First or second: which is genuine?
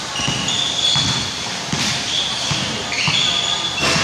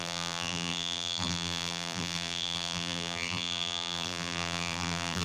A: first